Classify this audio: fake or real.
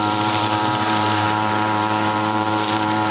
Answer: fake